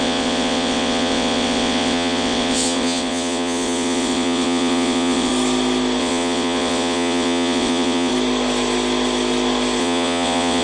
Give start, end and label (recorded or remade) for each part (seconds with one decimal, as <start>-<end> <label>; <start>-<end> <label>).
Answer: 0.0-5.3 remade; 5.3-6.0 recorded; 6.0-8.1 remade; 8.1-9.8 recorded; 9.8-10.6 remade